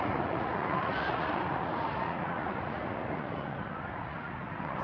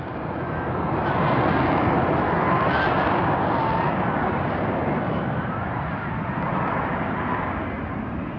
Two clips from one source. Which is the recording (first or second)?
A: second